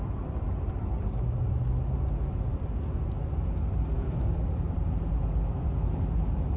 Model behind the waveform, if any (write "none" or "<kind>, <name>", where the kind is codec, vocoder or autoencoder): none